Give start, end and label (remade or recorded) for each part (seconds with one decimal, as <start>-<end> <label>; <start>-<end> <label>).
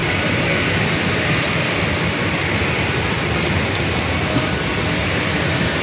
0.0-5.8 recorded